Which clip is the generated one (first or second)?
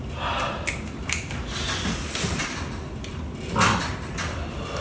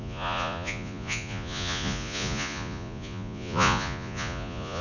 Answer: second